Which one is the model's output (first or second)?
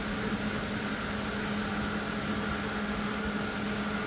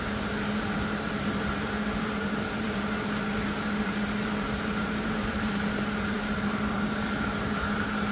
second